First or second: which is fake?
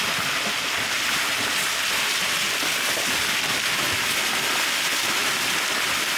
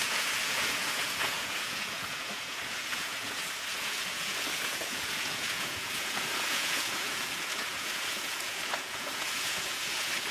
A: second